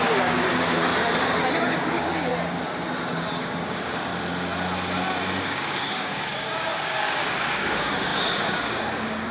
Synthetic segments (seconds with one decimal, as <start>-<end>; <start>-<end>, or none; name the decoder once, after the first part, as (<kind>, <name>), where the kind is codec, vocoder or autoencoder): 0.0-0.9 (codec, DAC); 1.5-2.3; 3.4-4.1; 5.4-9.3